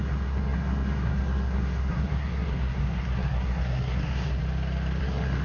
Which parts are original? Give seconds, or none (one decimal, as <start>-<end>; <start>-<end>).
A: 4.4-5.0